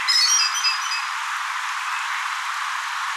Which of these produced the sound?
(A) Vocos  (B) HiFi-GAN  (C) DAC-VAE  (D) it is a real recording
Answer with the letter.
D